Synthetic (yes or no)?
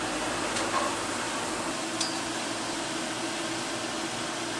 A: no